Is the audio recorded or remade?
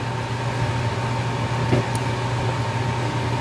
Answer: recorded